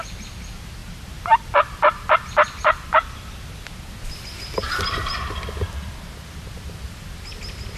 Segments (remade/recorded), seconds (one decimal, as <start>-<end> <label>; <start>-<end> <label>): 0.0-7.8 recorded